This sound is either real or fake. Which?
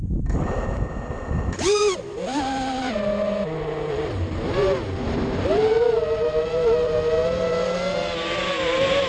real